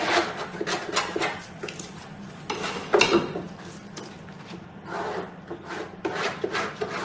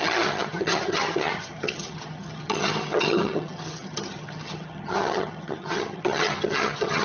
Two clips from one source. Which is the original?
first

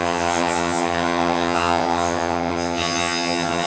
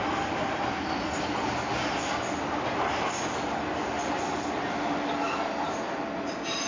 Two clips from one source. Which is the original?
second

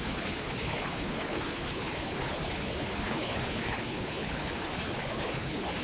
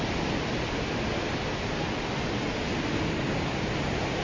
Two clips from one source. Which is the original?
second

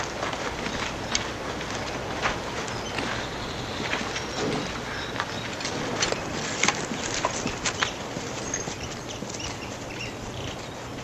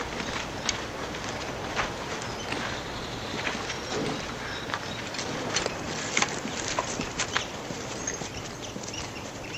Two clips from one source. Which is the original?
first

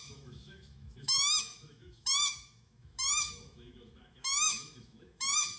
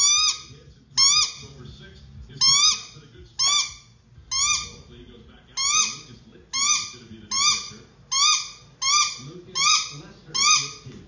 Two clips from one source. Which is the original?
second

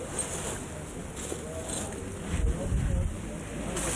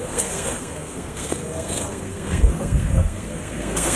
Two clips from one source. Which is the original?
first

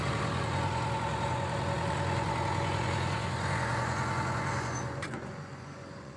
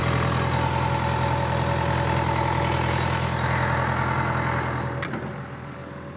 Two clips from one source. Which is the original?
second